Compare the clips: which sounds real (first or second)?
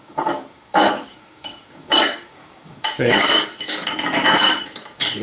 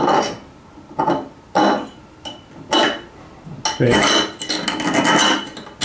second